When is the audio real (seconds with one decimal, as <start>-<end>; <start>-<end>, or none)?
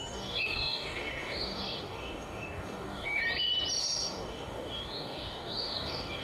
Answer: 3.2-3.8